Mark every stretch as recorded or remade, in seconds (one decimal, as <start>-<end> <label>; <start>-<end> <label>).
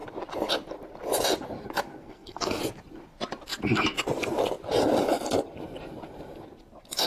0.0-2.0 recorded; 2.0-2.6 remade; 2.6-7.1 recorded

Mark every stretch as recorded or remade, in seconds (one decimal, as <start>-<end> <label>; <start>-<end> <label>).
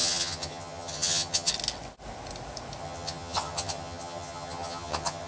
0.0-1.5 remade; 1.5-2.8 recorded; 2.8-5.3 remade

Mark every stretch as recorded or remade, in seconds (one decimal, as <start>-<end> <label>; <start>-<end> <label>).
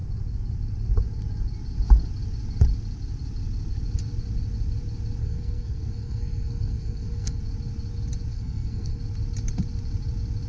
0.0-5.2 recorded; 5.2-7.4 remade; 7.4-8.3 recorded; 8.3-9.0 remade; 9.0-10.5 recorded